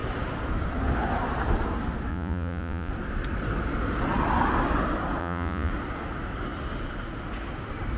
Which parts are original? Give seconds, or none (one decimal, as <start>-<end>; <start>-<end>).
0.0-2.1; 2.9-5.2; 5.7-8.0